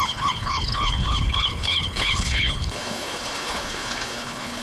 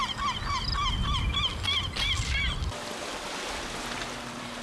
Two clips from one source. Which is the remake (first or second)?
first